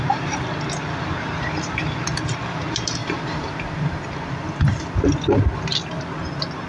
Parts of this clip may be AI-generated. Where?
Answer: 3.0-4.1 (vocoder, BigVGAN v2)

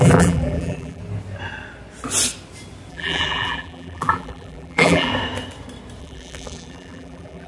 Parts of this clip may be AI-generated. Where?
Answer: 0.0-1.0 (vocoder, BigVGAN v2); 2.9-5.1; 6.0-7.5

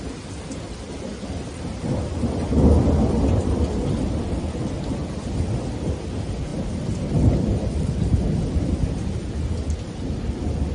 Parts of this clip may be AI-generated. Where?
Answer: 6.5-9.1 (vocoder, BigVGAN v2)

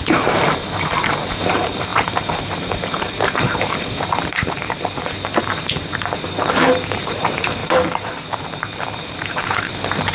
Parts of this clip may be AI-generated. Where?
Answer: 0.0-10.1 (vocoder, BigVGAN v2)

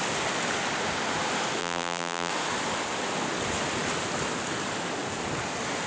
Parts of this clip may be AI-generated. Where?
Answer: 1.6-2.3 (vocoder, BigVGAN v2)

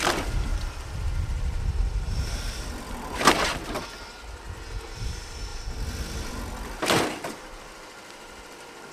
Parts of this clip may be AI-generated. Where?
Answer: 0.5-2.9 (vocoder, BigVGAN v2)

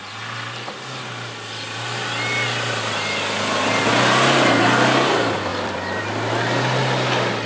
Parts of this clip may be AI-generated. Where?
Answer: 5.5-6.0 (vocoder, BigVGAN v2)